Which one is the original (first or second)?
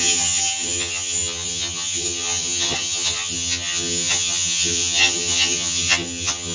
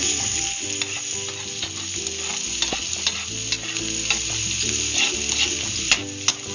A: second